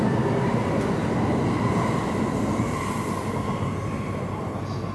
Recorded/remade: recorded